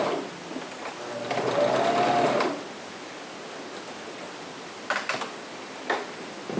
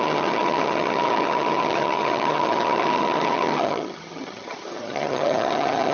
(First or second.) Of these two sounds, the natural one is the first